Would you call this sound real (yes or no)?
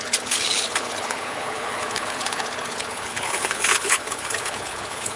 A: no